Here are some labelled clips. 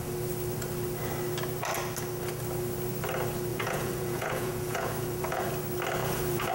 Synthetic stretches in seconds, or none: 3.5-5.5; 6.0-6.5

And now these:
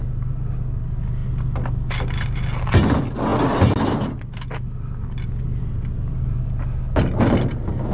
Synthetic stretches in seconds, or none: none